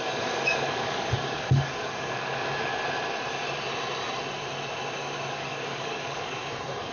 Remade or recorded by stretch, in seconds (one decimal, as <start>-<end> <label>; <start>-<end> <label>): 0.0-2.7 remade; 2.7-5.3 recorded; 5.3-6.4 remade; 6.4-6.9 recorded